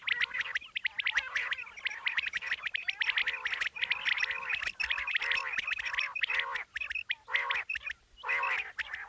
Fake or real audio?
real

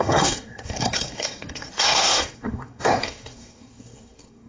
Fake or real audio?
fake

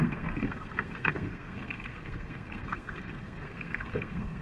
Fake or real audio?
fake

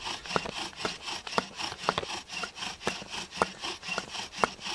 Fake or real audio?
real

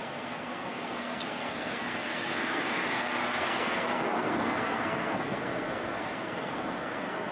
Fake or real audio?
fake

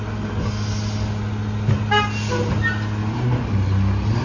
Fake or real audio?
real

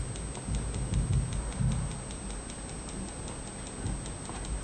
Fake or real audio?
real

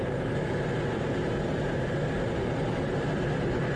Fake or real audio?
real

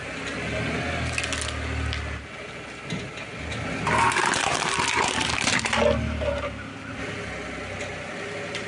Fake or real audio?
real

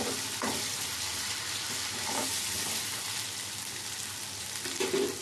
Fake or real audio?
real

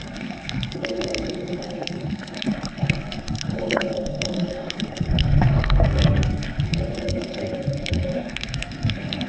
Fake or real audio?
fake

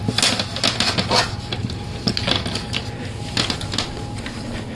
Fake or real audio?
real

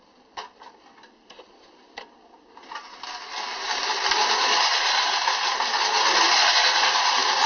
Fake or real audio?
real